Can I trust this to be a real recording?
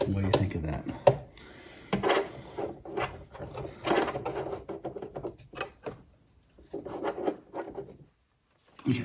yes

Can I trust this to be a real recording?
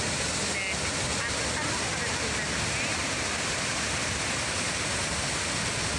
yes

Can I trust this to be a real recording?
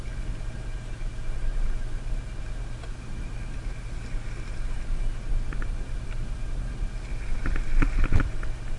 yes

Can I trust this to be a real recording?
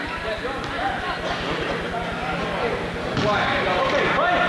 yes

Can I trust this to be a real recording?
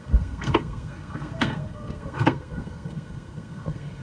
no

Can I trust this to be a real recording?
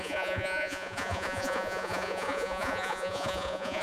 no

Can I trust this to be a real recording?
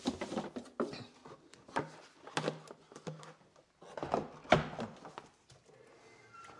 yes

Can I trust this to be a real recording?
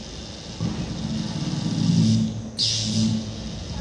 yes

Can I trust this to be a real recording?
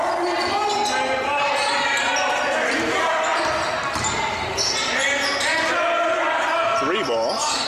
yes